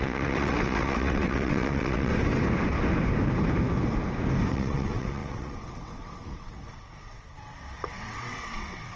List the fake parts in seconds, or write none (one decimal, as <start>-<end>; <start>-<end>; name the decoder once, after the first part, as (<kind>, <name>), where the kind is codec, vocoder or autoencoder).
0.0-2.1 (vocoder, WaveNeXt); 4.5-9.0